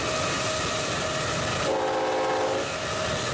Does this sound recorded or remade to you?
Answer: recorded